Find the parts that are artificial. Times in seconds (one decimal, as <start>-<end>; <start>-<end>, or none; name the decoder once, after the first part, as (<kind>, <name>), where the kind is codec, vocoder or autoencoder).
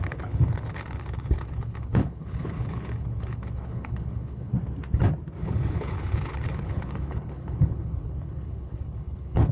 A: 0.0-4.5 (codec, HILCodec); 5.4-9.5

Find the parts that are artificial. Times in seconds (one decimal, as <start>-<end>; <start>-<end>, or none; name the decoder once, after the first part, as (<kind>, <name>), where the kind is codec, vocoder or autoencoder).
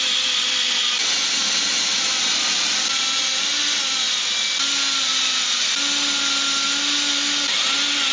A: none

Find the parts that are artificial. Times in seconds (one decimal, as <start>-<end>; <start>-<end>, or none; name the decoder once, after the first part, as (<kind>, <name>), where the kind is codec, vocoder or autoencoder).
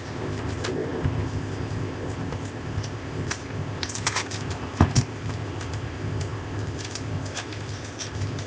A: 0.0-8.5 (codec, ZipCodec)